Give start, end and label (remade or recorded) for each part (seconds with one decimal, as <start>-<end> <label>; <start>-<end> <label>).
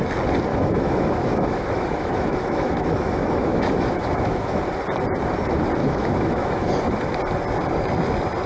0.0-0.5 recorded; 0.5-4.6 remade; 4.6-5.8 recorded; 5.8-6.7 remade; 6.7-8.5 recorded